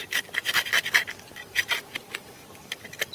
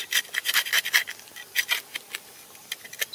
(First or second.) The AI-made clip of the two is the first